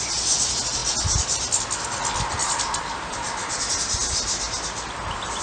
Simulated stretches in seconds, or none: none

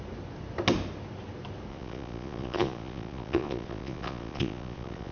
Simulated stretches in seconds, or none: 1.7-5.1 (vocoder, Vocos)

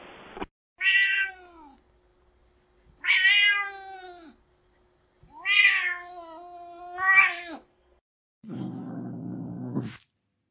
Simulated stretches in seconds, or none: 7.7-9.8 (codec, SNAC)

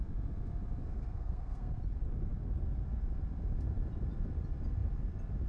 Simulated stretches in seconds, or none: 0.8-1.8 (codec, SNAC)